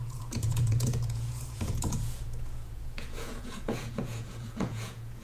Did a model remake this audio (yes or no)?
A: yes